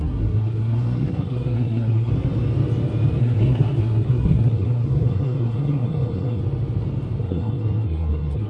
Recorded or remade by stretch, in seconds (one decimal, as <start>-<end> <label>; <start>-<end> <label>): 0.0-2.1 remade; 2.1-3.2 recorded; 3.2-6.4 remade; 6.4-7.2 recorded; 7.2-8.5 remade